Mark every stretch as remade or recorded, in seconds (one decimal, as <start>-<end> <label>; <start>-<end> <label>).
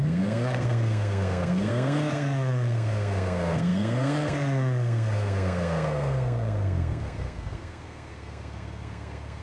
0.0-9.4 remade